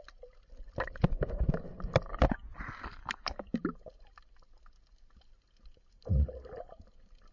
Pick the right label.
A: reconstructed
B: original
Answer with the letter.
B